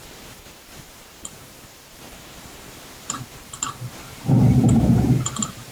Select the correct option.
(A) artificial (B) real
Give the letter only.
A